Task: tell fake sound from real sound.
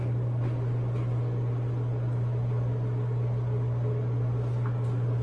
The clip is real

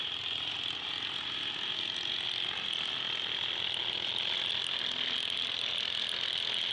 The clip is real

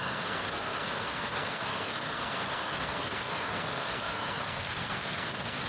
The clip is fake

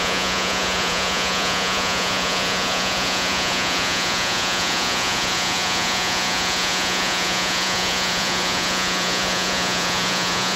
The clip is fake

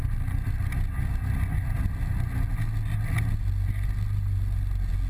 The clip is real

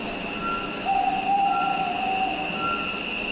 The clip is real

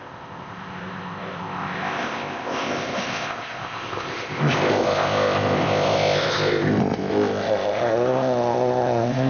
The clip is fake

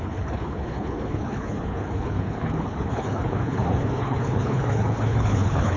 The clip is fake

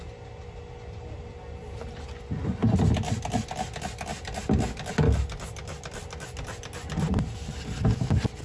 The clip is real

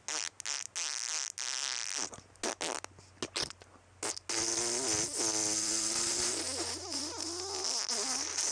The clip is real